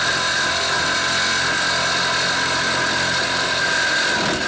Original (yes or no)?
yes